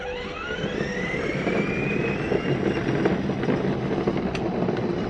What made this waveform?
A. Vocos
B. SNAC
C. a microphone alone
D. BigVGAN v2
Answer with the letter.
C